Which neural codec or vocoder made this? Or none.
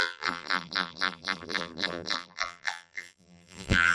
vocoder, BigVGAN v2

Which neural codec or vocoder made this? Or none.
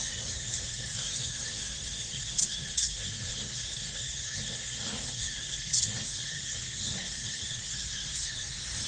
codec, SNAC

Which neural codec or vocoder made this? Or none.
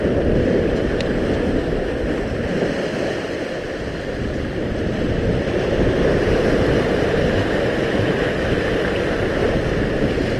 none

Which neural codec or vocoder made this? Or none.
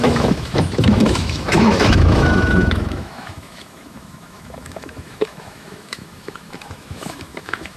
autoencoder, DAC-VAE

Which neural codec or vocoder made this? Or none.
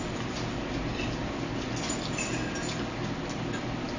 none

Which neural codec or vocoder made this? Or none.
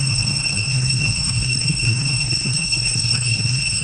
codec, SNAC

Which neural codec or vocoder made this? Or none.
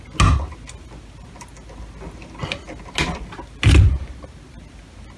none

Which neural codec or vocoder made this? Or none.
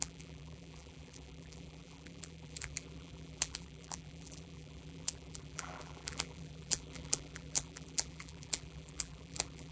vocoder, BigVGAN v2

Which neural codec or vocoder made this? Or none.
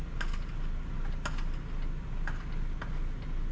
none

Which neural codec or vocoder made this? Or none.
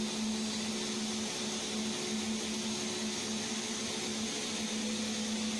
none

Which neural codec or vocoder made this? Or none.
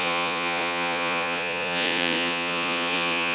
vocoder, Vocos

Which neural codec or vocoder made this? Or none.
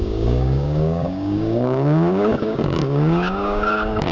codec, DAC